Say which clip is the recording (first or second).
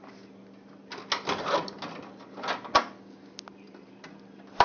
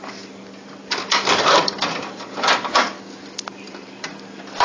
first